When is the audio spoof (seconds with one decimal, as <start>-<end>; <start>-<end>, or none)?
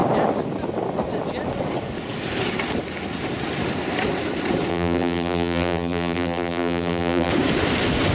4.7-7.3